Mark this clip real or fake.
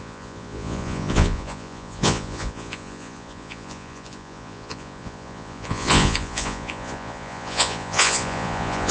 fake